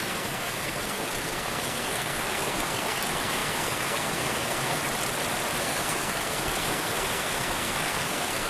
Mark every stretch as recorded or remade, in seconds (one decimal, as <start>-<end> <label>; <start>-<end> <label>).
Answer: 0.0-4.8 remade; 4.8-5.6 recorded; 5.6-8.5 remade